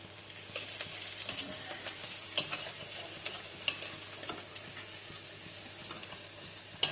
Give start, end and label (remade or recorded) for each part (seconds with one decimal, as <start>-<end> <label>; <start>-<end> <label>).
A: 0.0-6.9 recorded